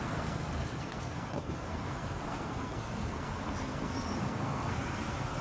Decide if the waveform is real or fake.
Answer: fake